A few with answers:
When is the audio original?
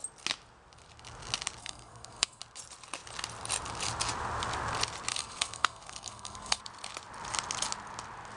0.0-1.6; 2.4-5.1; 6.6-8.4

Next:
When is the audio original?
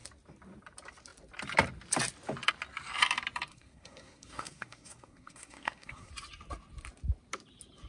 0.0-3.5; 6.1-7.9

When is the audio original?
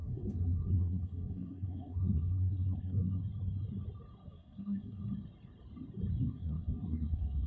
3.2-4.3; 5.0-6.2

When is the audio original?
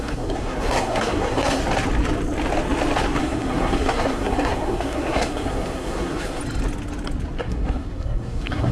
1.6-3.2; 6.4-7.4